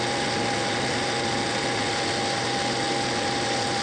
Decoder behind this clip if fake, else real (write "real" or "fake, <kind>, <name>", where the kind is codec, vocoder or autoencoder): real